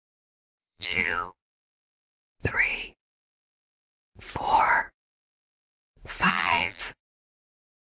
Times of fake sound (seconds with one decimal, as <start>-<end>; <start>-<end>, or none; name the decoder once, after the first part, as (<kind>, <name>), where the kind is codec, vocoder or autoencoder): 0.6-1.9 (vocoder, BigVGAN v2); 6.3-6.8